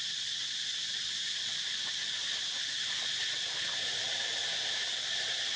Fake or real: real